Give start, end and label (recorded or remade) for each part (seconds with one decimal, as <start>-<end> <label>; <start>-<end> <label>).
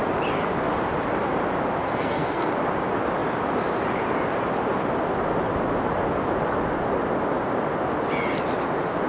0.0-1.8 recorded; 1.8-2.5 remade; 2.5-9.1 recorded